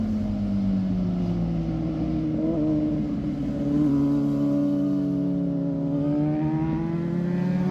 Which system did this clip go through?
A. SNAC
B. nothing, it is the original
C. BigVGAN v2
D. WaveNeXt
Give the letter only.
B